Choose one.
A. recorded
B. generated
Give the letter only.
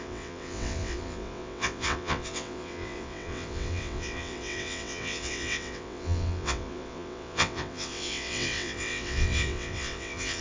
B